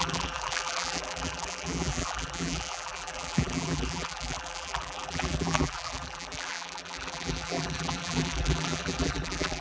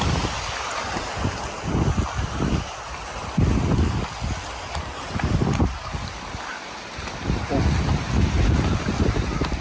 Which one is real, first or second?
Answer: second